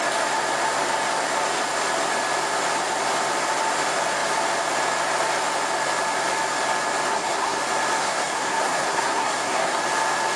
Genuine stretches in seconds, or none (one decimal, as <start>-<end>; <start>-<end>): 0.0-7.1; 7.6-8.0; 9.8-10.4